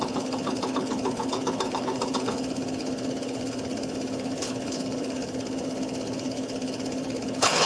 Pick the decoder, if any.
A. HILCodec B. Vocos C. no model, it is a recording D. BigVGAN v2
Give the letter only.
A